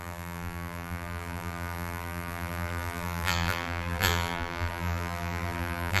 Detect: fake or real fake